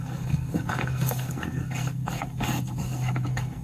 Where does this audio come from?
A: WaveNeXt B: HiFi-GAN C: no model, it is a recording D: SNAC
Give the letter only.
D